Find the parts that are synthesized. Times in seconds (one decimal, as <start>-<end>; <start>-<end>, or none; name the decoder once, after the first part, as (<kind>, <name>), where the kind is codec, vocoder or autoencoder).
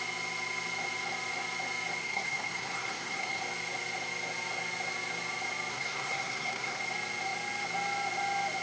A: 2.0-3.4 (codec, SNAC); 5.7-6.8